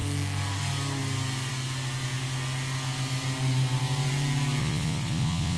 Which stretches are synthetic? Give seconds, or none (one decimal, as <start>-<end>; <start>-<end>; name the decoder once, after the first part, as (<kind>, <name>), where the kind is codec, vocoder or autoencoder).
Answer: 4.6-5.6 (vocoder, Vocos)